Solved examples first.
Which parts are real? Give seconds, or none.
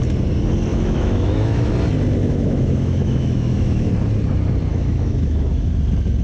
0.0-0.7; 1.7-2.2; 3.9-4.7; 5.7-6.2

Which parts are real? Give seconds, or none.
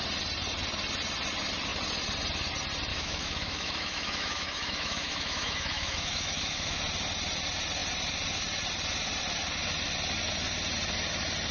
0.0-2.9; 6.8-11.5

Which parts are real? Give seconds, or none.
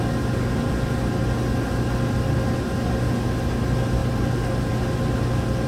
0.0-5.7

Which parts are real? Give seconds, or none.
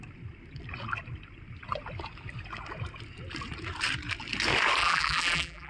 0.0-4.8